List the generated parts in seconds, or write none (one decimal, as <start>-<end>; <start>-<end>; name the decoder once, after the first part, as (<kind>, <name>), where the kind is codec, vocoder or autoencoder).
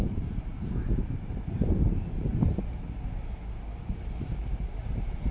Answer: 0.0-2.3 (vocoder, BigVGAN v2); 4.3-5.3